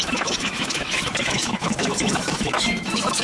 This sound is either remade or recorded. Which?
remade